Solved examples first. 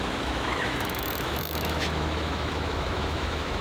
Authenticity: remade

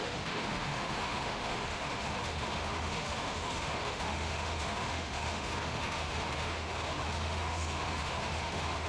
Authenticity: remade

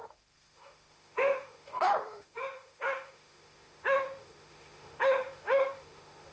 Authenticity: remade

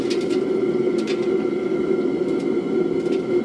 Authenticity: recorded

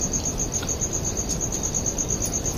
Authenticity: recorded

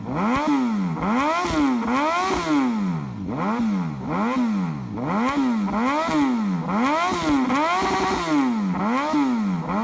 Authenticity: recorded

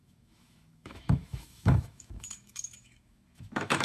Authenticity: remade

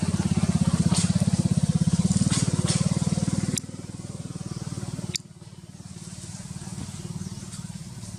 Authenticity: recorded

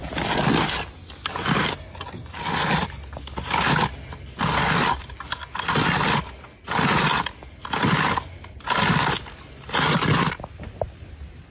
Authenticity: recorded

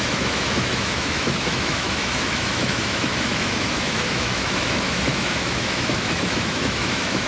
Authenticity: remade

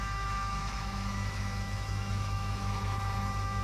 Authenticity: remade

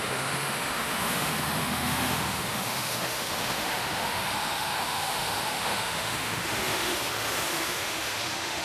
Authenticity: remade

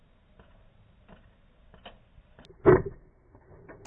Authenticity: recorded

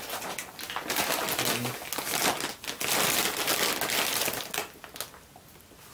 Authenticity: recorded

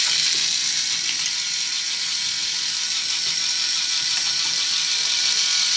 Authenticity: recorded